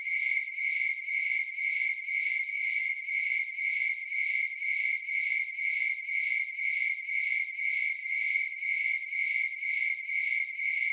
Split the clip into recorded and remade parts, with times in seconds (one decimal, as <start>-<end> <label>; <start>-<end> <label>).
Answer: 0.0-10.9 recorded

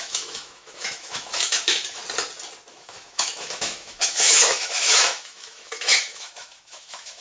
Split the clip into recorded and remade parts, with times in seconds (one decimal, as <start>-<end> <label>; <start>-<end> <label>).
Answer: 0.0-2.0 remade; 2.0-2.7 recorded; 2.7-7.2 remade